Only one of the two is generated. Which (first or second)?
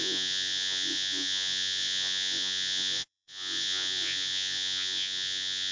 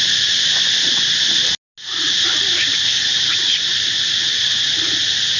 first